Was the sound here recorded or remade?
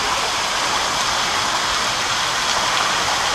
recorded